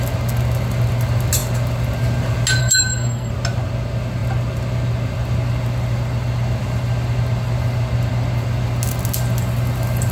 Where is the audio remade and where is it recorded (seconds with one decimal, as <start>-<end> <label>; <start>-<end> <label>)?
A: 0.0-2.6 recorded; 2.6-3.3 remade; 3.3-10.1 recorded